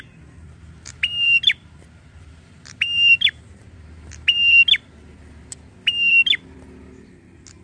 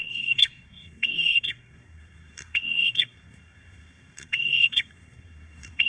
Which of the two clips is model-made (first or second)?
second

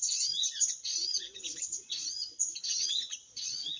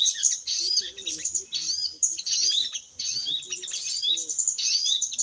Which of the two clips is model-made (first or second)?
first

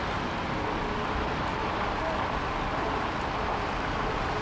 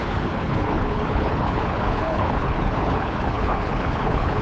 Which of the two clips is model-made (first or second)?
second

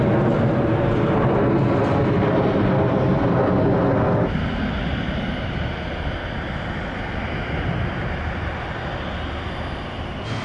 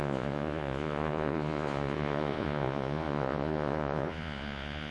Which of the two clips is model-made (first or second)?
second